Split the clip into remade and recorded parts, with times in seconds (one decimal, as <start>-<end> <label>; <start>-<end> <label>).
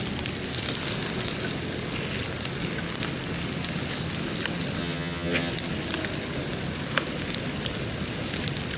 0.0-4.8 recorded; 4.8-5.5 remade; 5.5-8.8 recorded